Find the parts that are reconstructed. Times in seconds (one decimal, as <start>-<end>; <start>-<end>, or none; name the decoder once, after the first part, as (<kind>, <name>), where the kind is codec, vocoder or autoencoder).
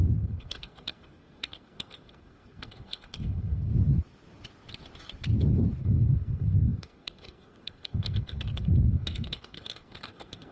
0.0-3.7 (codec, SNAC); 5.8-10.5